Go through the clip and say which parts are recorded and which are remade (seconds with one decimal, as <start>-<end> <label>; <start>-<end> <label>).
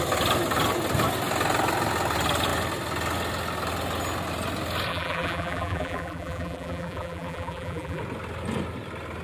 0.0-4.9 recorded; 4.9-8.0 remade; 8.0-9.2 recorded